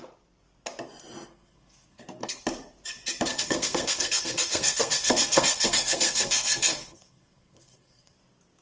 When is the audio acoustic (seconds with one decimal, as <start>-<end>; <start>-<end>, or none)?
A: 0.0-1.3; 2.4-3.3; 8.1-8.6